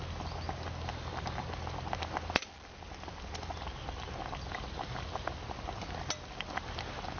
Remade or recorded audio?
recorded